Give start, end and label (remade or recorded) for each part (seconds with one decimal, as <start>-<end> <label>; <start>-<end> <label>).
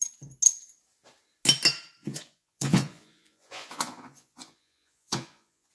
0.0-2.0 recorded; 2.0-5.7 remade